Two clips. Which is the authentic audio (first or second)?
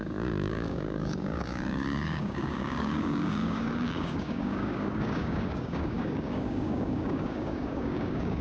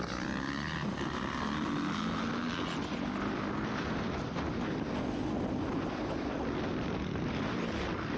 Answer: second